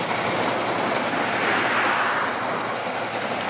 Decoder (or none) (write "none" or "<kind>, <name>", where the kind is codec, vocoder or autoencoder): none